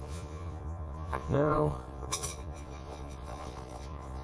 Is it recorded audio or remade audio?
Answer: remade